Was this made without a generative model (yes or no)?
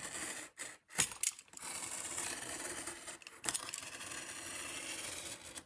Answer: yes